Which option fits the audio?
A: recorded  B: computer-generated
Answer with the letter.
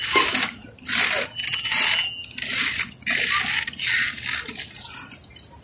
A